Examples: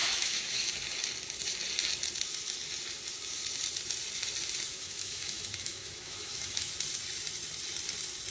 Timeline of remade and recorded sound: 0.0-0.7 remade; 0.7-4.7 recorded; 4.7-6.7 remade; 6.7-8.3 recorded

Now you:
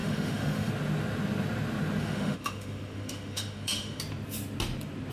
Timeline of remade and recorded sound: 0.0-0.7 remade; 0.7-2.0 recorded; 2.0-4.0 remade; 4.0-5.1 recorded

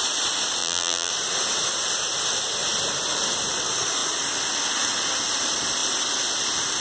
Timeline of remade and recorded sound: 0.0-0.6 recorded; 0.6-1.1 remade; 1.1-6.8 recorded

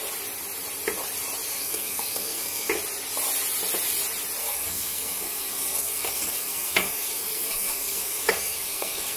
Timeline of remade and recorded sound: 0.0-1.5 recorded; 1.5-2.7 remade; 2.7-4.4 recorded; 4.4-9.2 remade

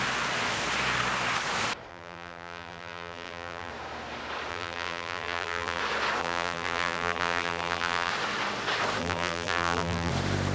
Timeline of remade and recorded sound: 0.0-1.9 recorded; 1.9-3.7 remade; 3.7-4.5 recorded; 4.5-5.8 remade; 5.8-6.2 recorded; 6.2-8.1 remade; 8.1-9.0 recorded; 9.0-10.1 remade; 10.1-10.5 recorded

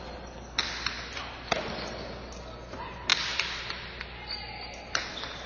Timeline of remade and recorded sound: 0.0-5.5 recorded